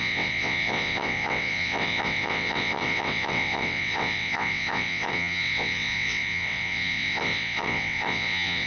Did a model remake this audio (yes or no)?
yes